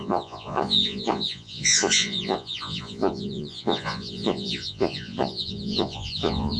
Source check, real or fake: fake